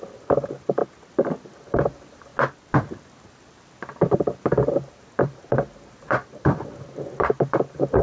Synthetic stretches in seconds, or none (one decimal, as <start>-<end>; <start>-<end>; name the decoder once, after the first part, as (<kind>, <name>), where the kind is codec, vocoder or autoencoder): 0.0-0.8 (vocoder, BigVGAN v2); 1.4-2.3; 4.9-8.0

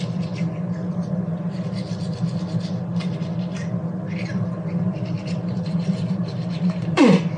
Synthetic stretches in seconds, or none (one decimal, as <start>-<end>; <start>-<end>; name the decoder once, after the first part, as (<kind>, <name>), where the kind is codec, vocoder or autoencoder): 4.3-7.0 (vocoder, BigVGAN v2)

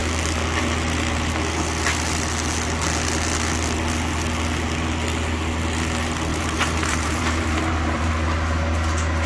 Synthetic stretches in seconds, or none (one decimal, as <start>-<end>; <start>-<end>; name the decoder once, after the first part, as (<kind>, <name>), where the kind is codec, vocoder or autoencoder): 6.3-8.1 (vocoder, BigVGAN v2)

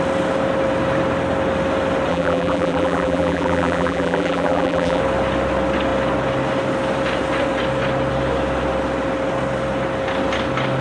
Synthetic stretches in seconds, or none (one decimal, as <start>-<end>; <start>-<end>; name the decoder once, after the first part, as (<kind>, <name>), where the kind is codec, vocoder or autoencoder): 2.1-5.0 (vocoder, BigVGAN v2)

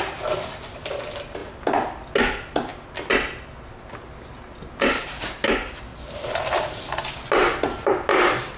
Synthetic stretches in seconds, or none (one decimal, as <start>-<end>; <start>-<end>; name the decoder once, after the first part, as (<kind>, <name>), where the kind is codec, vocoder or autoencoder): 5.9-7.0 (vocoder, BigVGAN v2)